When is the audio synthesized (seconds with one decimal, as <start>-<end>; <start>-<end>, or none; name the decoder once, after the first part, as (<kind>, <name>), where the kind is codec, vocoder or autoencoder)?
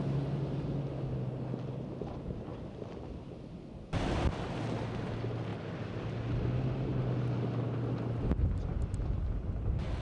none